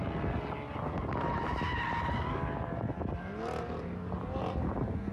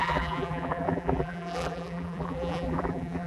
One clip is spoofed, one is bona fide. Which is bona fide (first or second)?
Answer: first